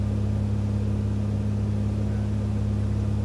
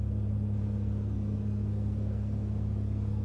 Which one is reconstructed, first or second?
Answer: second